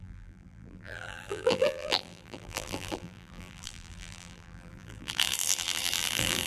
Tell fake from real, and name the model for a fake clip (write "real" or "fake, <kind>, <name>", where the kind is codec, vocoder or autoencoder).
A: fake, vocoder, BigVGAN v2